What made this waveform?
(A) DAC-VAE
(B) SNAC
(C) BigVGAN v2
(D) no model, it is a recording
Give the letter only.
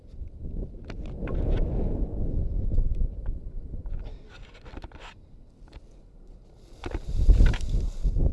D